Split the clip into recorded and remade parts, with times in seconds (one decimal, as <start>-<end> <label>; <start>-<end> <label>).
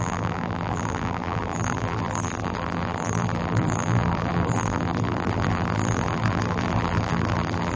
0.0-7.8 remade